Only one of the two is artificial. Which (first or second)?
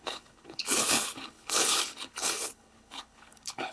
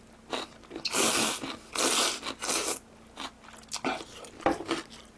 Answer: first